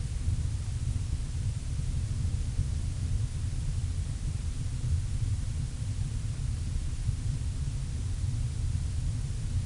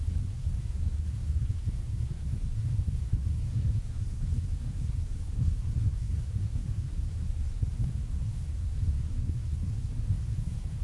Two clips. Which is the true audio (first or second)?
first